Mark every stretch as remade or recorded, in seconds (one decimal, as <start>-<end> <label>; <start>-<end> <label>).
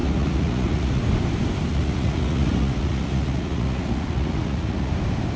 0.0-1.0 remade; 1.0-1.7 recorded; 1.7-4.9 remade; 4.9-5.4 recorded